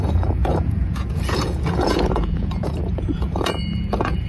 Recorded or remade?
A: remade